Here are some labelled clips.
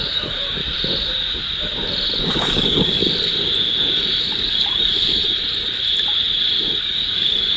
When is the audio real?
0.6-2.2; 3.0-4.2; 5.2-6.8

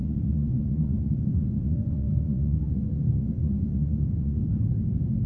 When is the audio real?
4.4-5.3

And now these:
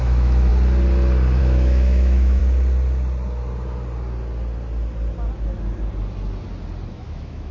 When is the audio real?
0.5-1.4; 2.4-6.9

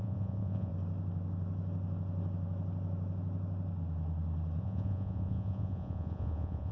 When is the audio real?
0.7-4.6

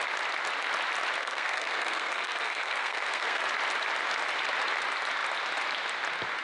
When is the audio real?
0.0-1.2; 3.4-6.4

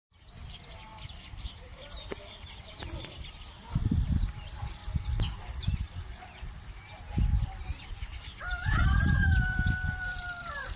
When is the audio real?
4.8-8.4